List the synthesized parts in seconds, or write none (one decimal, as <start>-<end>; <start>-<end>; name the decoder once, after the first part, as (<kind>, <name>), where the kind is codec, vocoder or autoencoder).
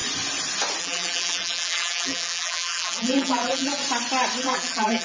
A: 0.8-3.8 (vocoder, BigVGAN v2); 4.4-5.0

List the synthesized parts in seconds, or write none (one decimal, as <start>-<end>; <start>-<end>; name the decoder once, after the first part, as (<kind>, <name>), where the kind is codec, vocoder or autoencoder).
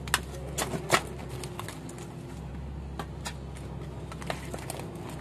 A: none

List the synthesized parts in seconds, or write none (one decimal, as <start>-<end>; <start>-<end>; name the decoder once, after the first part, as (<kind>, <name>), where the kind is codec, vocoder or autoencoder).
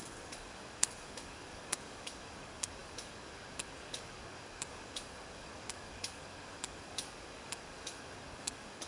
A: 0.0-8.9 (codec, DAC)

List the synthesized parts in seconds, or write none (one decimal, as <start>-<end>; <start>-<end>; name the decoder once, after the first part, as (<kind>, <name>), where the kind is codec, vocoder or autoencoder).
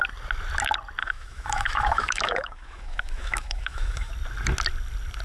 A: 1.0-4.1 (autoencoder, DAC-VAE)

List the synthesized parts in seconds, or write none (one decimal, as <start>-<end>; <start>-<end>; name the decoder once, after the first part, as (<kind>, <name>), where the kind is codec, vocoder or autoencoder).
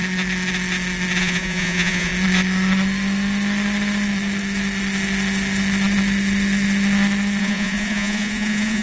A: 1.2-2.1 (vocoder, Vocos); 7.4-8.8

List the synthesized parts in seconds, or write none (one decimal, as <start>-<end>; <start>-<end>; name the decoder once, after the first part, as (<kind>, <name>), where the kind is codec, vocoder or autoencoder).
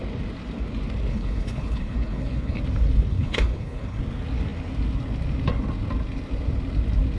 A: 1.1-2.6 (codec, HILCodec); 3.1-4.0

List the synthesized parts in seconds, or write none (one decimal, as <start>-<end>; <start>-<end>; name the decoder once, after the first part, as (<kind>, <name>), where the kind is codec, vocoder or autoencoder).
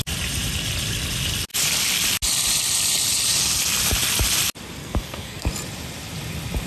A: 4.8-5.5 (codec, SNAC)